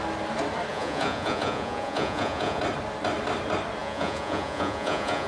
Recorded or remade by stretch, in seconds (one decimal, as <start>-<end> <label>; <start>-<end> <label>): 0.0-0.7 recorded; 0.7-2.6 remade; 2.6-3.8 recorded; 3.8-5.3 remade